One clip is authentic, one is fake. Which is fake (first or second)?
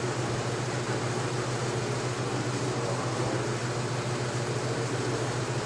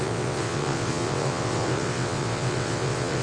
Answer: second